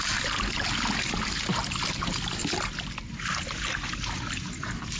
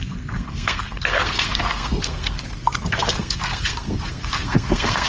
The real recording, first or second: first